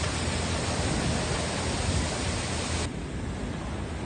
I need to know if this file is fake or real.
real